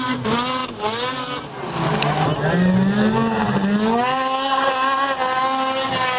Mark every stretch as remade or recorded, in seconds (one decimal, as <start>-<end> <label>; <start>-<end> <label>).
0.0-6.2 recorded